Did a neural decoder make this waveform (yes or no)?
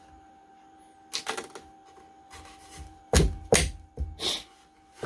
no